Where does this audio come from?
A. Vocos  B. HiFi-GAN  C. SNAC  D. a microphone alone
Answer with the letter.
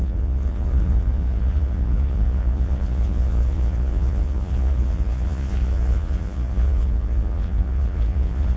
A